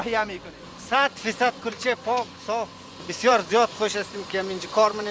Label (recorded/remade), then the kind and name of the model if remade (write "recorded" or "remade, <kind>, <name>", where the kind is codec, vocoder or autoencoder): remade, vocoder, Vocos